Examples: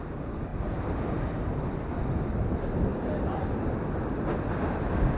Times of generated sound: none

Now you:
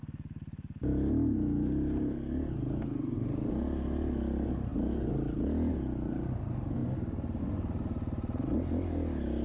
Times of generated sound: none

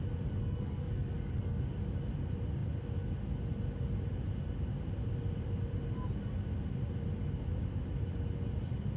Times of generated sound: 0.4-1.6 (codec, SNAC)

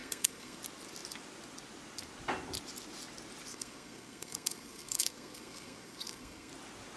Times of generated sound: 0.0-0.6 (codec, SNAC); 3.5-6.5